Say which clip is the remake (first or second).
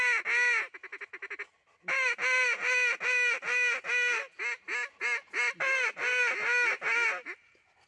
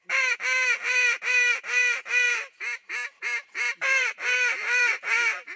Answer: second